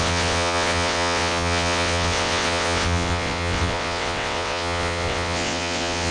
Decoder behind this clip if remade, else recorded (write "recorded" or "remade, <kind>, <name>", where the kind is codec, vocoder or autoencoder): remade, vocoder, WaveNeXt